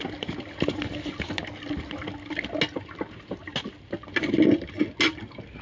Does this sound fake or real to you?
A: real